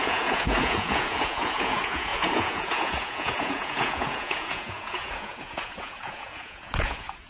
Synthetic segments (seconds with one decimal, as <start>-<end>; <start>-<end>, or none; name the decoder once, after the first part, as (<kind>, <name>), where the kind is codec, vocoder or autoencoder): 0.0-7.3 (vocoder, Vocos)